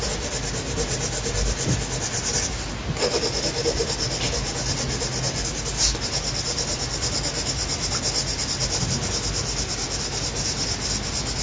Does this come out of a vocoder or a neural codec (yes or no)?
no